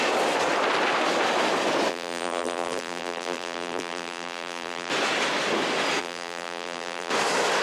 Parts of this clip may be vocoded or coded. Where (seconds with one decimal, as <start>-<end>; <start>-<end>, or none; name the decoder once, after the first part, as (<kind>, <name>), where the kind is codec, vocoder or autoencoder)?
1.9-4.9 (vocoder, BigVGAN v2); 6.0-7.1